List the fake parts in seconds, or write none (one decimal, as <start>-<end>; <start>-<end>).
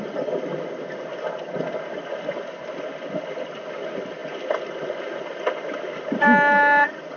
none